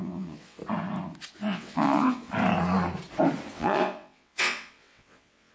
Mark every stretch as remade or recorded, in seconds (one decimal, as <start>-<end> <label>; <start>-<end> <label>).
0.0-0.6 remade; 0.6-1.3 recorded; 1.3-2.3 remade; 2.3-3.5 recorded; 3.5-5.5 remade